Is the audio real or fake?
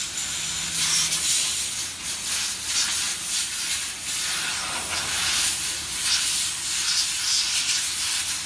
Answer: real